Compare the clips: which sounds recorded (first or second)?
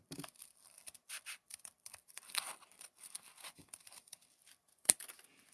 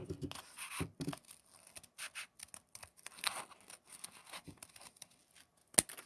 second